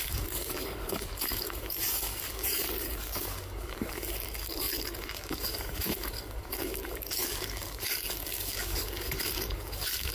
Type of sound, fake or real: fake